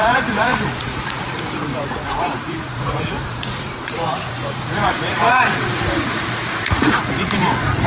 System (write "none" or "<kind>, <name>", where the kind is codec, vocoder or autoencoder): vocoder, Vocos